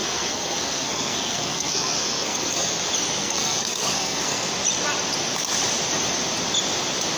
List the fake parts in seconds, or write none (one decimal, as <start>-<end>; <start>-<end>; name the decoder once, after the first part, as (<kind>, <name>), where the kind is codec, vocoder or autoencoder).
0.0-2.7 (codec, SNAC); 3.2-4.5